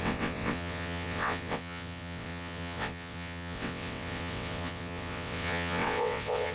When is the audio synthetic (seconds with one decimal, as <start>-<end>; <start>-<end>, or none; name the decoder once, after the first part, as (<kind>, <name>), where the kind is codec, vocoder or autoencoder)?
0.0-6.5 (vocoder, WaveNeXt)